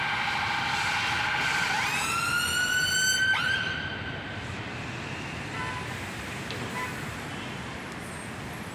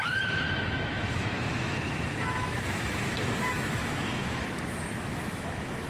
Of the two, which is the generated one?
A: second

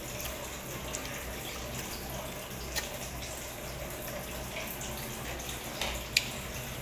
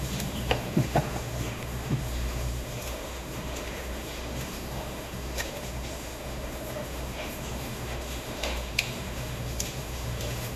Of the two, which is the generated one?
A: second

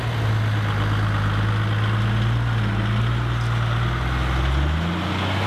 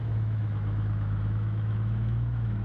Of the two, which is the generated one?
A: second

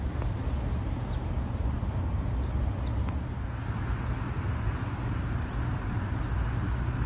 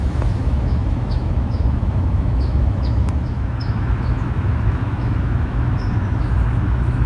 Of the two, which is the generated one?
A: second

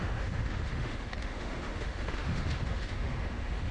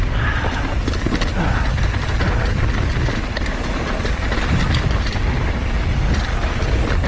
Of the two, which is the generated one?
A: first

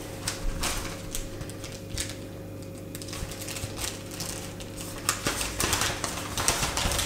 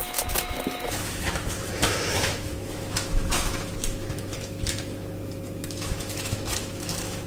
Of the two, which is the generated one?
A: second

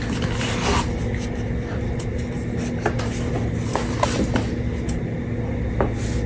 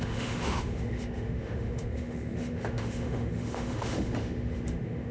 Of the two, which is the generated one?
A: second